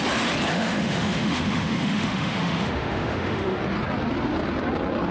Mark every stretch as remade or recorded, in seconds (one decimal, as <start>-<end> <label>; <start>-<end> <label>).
0.0-0.5 recorded; 0.5-3.6 remade; 3.6-5.1 recorded